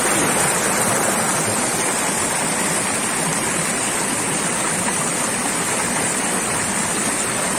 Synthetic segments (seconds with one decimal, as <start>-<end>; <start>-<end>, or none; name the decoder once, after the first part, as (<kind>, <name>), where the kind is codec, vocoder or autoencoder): 3.3-6.3 (vocoder, BigVGAN v2)